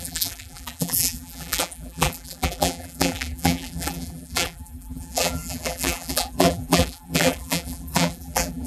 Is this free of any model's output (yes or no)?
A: no